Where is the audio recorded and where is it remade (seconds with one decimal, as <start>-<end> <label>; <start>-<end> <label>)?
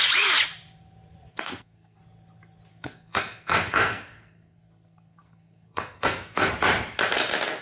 0.0-1.3 recorded; 1.3-2.0 remade; 2.0-2.7 recorded; 2.7-6.5 remade; 6.5-7.6 recorded